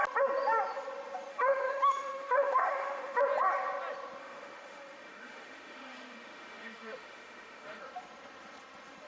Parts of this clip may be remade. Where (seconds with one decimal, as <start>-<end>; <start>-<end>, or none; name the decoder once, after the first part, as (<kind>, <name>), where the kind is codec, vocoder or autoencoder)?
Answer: 1.3-3.2 (autoencoder, DAC-VAE); 4.2-7.8